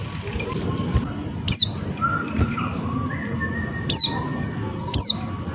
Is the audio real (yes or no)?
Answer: yes